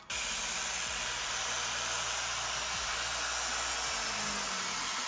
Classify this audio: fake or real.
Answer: real